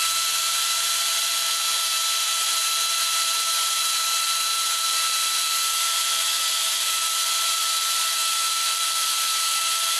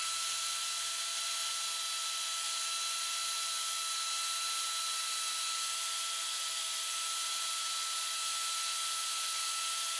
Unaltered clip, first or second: second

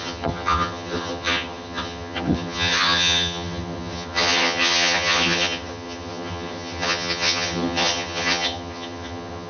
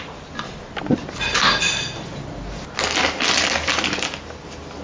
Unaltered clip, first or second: second